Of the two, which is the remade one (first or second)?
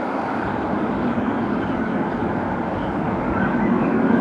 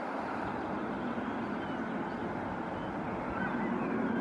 first